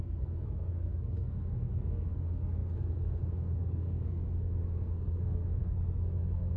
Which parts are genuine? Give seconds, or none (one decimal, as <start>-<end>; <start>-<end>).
none